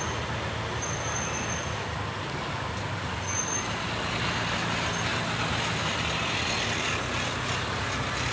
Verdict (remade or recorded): recorded